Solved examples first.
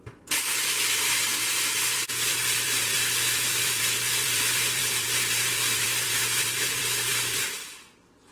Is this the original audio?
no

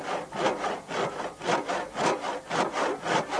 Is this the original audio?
yes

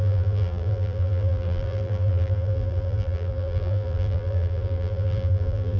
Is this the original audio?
no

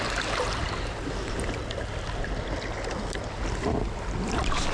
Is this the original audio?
yes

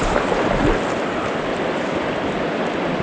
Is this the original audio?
no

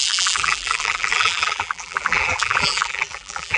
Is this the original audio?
no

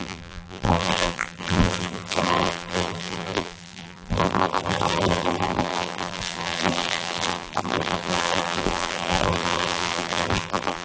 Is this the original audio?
no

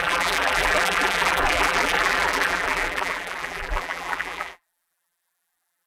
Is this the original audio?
no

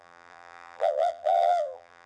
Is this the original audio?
no